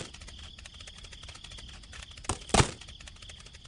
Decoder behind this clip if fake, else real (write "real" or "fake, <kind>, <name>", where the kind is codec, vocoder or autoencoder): real